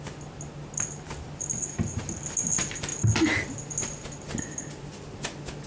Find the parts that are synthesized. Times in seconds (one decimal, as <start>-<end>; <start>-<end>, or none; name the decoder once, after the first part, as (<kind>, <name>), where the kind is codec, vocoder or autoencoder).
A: none